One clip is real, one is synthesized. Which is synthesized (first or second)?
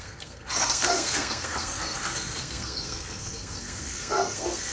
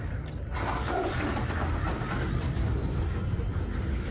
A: first